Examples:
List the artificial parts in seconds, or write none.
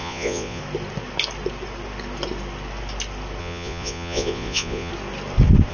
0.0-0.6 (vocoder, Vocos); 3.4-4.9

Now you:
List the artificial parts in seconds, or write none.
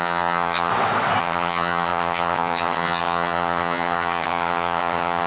0.0-0.7 (vocoder, HiFi-GAN); 1.2-5.3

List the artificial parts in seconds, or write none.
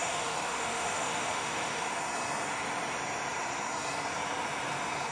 0.0-2.0 (autoencoder, DAC-VAE)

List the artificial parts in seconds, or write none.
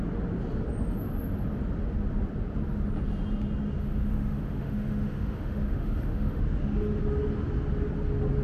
3.8-6.4 (autoencoder, DAC-VAE)